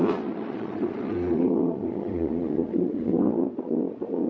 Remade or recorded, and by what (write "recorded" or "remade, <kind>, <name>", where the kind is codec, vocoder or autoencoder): remade, vocoder, Vocos